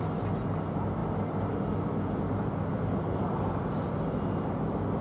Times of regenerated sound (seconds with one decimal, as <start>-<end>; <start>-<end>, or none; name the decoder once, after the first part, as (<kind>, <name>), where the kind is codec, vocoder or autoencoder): none